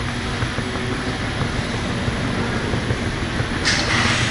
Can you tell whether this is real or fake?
real